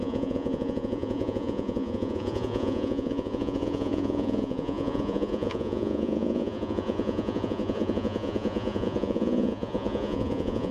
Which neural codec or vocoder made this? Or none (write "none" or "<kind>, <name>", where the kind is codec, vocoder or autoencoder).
vocoder, Vocos